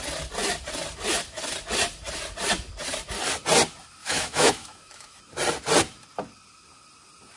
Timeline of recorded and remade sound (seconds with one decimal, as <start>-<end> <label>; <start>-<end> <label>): 0.0-4.0 recorded; 4.0-5.2 remade; 5.2-7.4 recorded